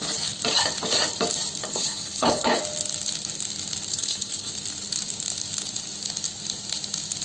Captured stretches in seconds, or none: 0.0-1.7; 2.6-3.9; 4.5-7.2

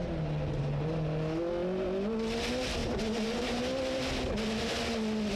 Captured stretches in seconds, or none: 0.0-2.8; 3.6-5.4

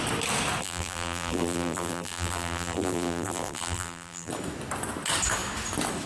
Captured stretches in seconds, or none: 0.0-0.6; 4.3-6.1